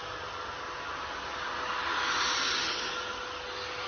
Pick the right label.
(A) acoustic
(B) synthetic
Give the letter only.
A